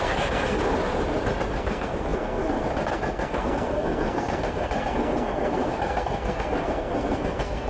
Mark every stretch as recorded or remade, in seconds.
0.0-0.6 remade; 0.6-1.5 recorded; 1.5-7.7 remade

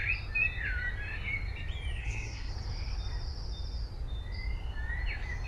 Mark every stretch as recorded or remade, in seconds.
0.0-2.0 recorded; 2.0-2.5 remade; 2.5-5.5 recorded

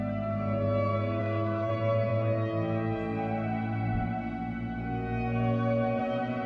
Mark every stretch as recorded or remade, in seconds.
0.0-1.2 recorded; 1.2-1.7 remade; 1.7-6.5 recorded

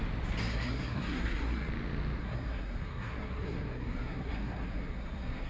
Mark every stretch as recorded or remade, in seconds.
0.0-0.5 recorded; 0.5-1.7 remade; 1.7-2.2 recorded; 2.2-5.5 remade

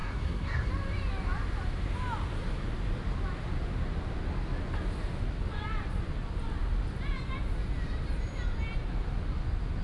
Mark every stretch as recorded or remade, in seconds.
0.0-0.7 remade; 0.7-9.8 recorded

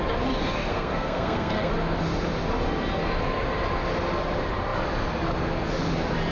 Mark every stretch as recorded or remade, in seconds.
0.0-0.7 recorded; 0.7-1.7 remade; 1.7-6.3 recorded

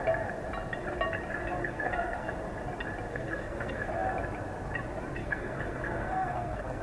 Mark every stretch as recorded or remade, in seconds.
0.0-1.6 recorded; 1.6-2.3 remade; 2.3-3.1 recorded; 3.1-3.9 remade; 3.9-5.2 recorded; 5.2-6.8 remade